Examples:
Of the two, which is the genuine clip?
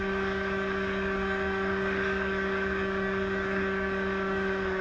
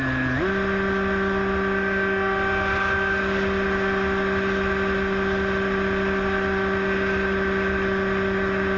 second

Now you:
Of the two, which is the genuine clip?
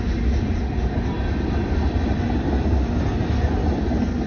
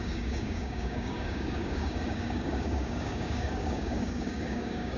first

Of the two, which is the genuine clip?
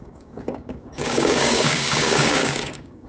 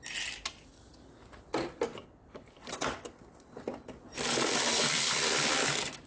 second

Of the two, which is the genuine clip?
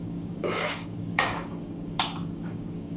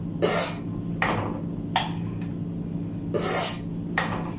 second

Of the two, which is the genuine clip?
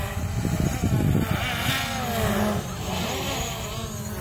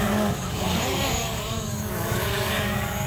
first